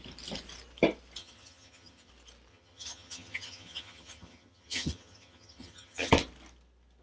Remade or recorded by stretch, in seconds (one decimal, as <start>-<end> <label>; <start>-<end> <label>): 0.0-1.2 recorded; 1.2-2.1 remade; 2.1-2.5 recorded; 2.5-6.1 remade; 6.1-7.0 recorded